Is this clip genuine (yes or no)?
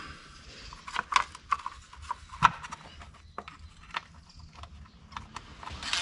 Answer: yes